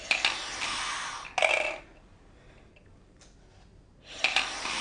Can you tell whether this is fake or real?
real